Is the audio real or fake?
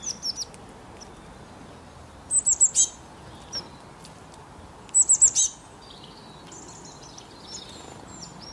real